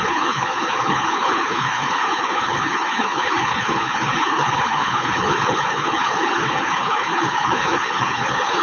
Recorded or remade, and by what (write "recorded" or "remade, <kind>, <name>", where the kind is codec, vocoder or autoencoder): remade, codec, HILCodec